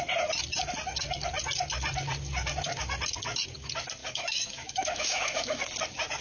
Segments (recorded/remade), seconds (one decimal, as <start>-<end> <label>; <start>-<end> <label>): 0.0-4.0 recorded; 4.0-5.6 remade; 5.6-6.2 recorded